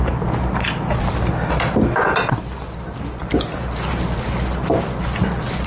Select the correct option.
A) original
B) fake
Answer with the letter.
A